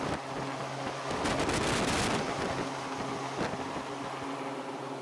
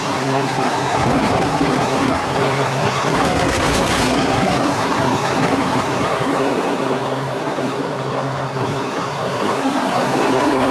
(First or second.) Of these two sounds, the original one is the first